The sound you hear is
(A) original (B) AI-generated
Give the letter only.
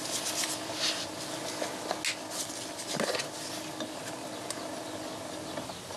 A